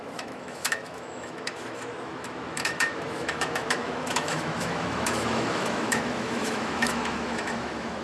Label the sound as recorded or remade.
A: remade